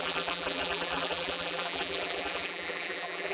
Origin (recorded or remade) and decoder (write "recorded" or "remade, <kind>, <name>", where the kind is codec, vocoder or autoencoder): remade, vocoder, BigVGAN v2